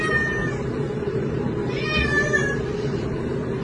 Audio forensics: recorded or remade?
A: remade